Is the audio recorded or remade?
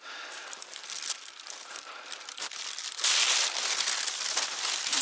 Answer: remade